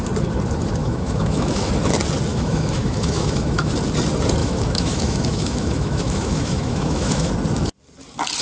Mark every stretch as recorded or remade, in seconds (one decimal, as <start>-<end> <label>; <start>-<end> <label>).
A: 0.0-0.8 recorded; 0.8-1.7 remade; 1.7-2.3 recorded; 2.3-3.7 remade; 3.7-4.4 recorded; 4.4-7.3 remade; 7.3-8.4 recorded